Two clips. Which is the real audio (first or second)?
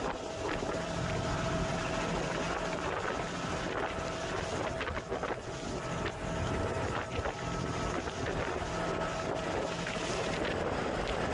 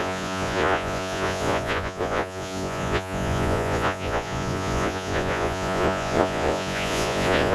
first